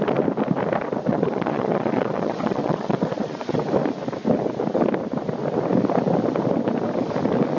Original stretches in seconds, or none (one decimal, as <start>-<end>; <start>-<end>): 0.0-1.1; 3.6-7.6